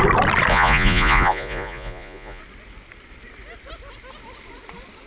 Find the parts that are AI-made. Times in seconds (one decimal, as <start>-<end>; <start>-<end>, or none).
0.5-2.4